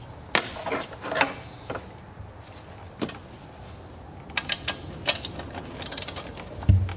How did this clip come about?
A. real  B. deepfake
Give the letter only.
A